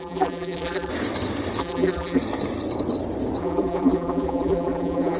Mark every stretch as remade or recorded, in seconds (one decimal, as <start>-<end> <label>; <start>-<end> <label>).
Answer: 0.0-0.9 remade; 0.9-1.6 recorded; 1.6-2.2 remade; 2.2-3.4 recorded; 3.4-5.2 remade